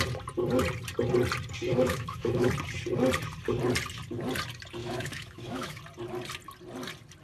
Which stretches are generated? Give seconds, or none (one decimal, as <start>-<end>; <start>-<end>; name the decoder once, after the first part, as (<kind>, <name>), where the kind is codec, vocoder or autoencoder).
1.7-2.5 (autoencoder, DAC-VAE); 4.8-5.8